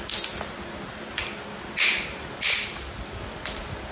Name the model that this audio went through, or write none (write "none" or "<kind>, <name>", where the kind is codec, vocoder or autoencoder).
none